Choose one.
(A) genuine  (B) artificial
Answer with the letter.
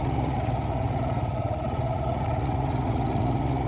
B